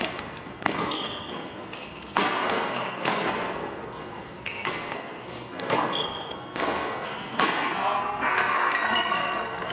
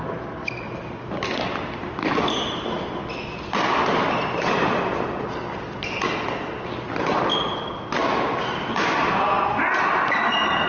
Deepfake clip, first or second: first